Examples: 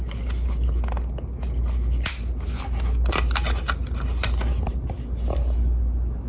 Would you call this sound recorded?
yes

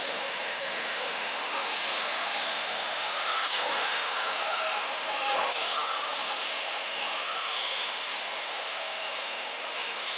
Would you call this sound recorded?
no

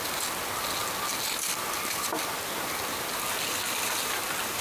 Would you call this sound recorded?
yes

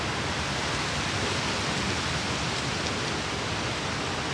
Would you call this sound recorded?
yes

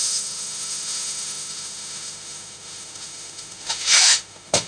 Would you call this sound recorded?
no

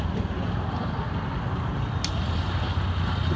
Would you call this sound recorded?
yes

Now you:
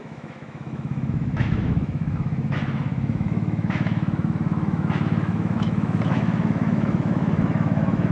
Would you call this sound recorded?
no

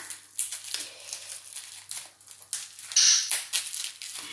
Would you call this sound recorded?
yes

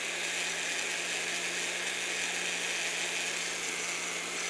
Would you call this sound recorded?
yes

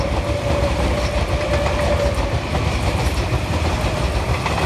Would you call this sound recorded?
yes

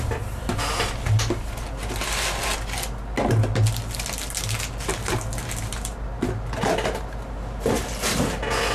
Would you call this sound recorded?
yes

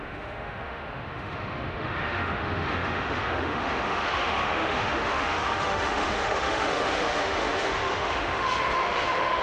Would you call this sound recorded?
no